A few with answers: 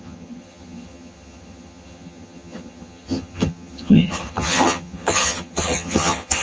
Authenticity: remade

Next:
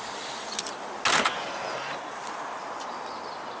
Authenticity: recorded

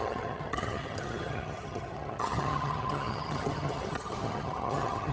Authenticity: remade